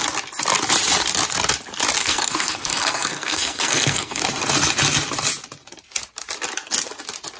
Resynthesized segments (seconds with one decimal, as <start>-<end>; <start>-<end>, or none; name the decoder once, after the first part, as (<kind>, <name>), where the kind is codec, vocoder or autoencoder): 2.0-4.2 (codec, SNAC)